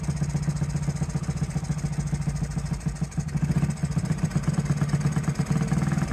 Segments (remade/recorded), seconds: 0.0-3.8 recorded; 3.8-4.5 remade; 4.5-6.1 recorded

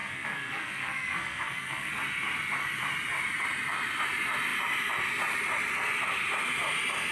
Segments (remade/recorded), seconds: 0.0-1.9 remade; 1.9-7.1 recorded

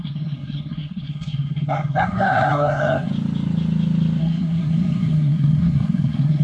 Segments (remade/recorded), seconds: 0.0-3.1 remade; 3.1-4.2 recorded; 4.2-6.4 remade

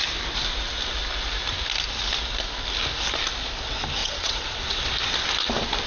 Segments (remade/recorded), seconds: 0.0-4.0 recorded; 4.0-4.9 remade; 4.9-5.9 recorded

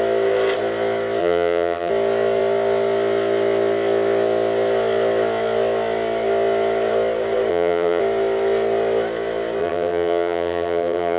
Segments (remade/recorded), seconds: 0.0-1.2 recorded; 1.2-1.9 remade; 1.9-7.5 recorded; 7.5-8.0 remade; 8.0-9.6 recorded; 9.6-11.2 remade

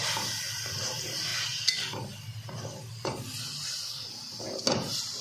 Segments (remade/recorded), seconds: 0.0-5.2 recorded